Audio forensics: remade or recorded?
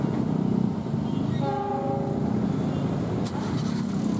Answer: recorded